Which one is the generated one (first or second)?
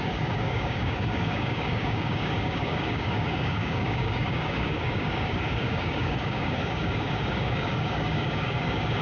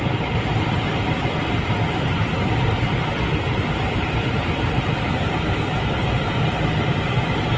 first